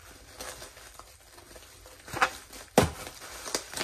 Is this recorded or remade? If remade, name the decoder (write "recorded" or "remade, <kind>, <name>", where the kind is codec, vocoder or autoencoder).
recorded